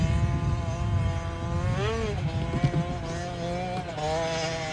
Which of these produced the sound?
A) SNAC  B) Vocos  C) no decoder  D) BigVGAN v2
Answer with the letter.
C